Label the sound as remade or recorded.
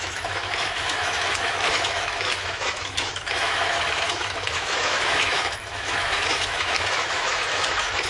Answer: remade